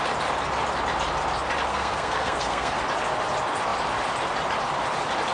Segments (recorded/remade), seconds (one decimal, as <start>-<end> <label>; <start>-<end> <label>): 0.0-1.7 recorded; 1.7-2.8 remade; 2.8-5.3 recorded